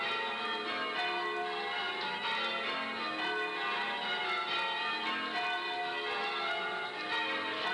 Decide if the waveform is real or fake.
real